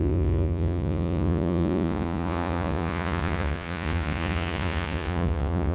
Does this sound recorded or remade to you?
remade